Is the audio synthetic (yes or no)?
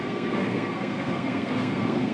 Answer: yes